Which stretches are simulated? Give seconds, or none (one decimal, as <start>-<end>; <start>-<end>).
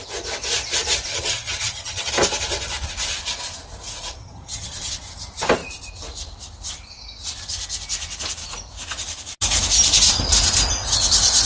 1.1-2.1; 4.2-4.9